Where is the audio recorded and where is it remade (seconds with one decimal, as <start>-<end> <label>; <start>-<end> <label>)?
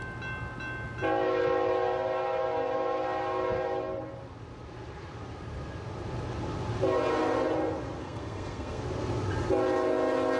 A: 0.0-8.0 recorded; 8.0-8.8 remade; 8.8-10.4 recorded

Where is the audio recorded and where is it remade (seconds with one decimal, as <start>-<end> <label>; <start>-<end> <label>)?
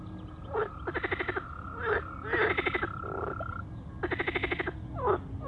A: 0.0-5.5 recorded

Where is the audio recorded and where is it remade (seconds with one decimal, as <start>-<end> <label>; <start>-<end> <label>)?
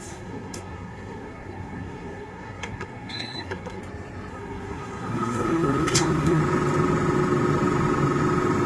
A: 0.0-3.8 remade; 3.8-4.3 recorded; 4.3-6.4 remade; 6.4-8.7 recorded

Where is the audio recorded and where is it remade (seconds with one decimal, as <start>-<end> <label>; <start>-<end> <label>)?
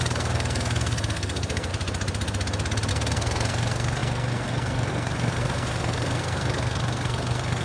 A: 0.0-1.7 remade; 1.7-2.9 recorded; 2.9-7.6 remade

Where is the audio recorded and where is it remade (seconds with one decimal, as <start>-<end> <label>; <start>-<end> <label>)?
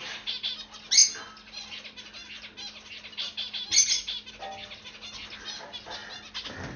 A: 0.0-6.8 recorded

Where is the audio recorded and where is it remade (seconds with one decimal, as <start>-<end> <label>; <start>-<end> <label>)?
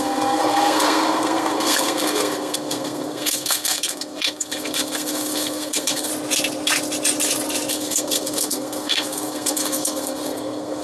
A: 0.0-6.1 remade; 6.1-7.7 recorded; 7.7-10.8 remade